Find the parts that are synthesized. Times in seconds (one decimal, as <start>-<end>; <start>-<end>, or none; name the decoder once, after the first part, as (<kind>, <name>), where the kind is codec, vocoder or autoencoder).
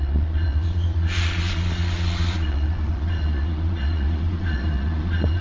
0.0-5.4 (vocoder, Vocos)